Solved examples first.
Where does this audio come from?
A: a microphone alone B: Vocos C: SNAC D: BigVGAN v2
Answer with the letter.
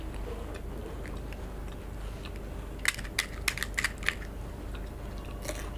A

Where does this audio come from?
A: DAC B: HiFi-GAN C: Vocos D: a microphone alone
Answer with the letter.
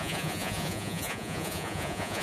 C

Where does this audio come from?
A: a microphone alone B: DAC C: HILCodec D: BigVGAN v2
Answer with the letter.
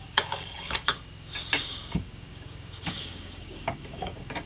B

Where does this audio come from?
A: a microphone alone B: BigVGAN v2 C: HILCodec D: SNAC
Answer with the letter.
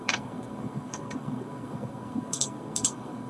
D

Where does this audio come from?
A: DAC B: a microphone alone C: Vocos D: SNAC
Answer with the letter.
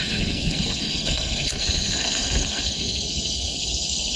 D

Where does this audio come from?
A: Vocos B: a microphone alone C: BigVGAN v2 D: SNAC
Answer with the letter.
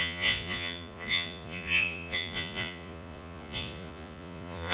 A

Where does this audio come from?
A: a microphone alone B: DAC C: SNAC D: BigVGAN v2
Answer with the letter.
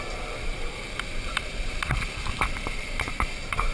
D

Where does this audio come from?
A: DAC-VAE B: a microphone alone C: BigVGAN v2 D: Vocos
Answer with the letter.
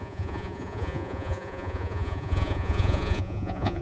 D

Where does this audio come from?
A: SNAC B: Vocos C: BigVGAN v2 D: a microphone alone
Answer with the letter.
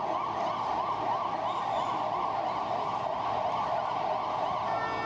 D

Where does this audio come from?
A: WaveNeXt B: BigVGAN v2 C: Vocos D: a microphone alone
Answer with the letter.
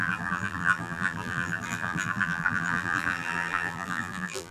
B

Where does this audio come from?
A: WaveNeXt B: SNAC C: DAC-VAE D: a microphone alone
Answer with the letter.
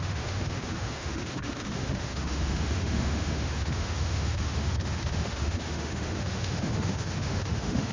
C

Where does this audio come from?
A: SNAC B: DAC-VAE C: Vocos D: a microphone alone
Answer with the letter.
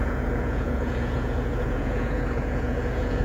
C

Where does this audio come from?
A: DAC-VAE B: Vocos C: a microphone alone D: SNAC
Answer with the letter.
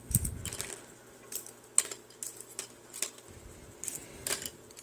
C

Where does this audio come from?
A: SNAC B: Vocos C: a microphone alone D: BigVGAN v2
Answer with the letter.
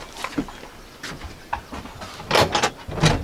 C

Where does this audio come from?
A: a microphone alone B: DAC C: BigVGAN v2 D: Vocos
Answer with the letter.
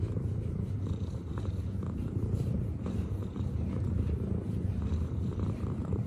C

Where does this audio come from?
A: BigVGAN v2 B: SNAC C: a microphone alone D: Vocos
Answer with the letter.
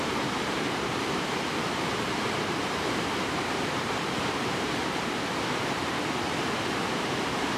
A